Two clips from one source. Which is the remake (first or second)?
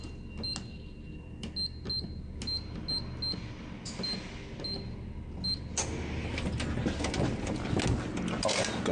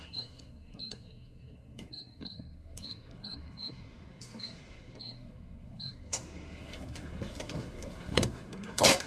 second